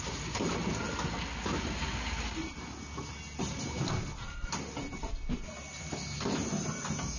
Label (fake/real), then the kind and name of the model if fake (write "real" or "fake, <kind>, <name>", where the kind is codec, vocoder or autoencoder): real